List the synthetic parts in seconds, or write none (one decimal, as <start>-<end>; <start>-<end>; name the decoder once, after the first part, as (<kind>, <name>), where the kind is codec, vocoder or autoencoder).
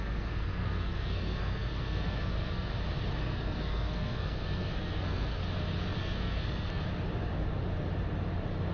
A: 0.0-2.7 (codec, SNAC); 3.2-5.4; 6.0-6.8